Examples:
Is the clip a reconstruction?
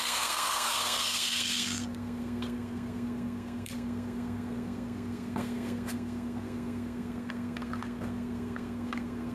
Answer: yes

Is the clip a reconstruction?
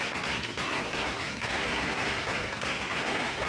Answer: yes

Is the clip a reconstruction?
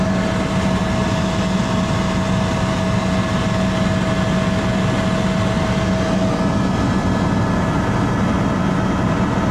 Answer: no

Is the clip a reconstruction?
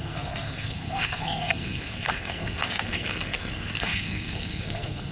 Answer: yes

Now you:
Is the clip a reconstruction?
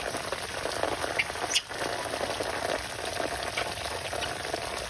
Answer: no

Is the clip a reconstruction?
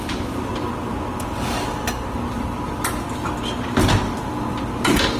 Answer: no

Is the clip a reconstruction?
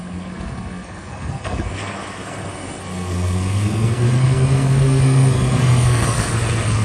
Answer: yes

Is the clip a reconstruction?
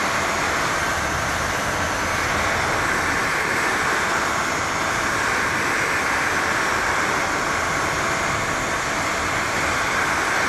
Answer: no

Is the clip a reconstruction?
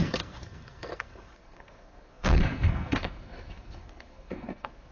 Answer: yes